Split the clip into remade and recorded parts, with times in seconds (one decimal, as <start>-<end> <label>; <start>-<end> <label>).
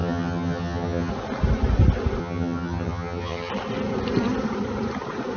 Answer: 0.0-1.1 remade; 1.1-2.2 recorded; 2.2-3.5 remade; 3.5-5.4 recorded